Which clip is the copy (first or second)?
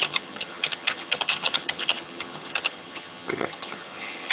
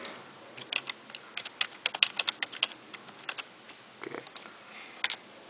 first